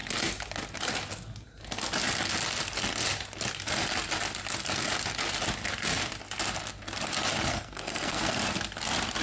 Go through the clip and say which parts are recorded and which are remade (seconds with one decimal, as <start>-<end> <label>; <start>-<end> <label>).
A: 0.0-7.5 recorded; 7.5-8.4 remade; 8.4-9.2 recorded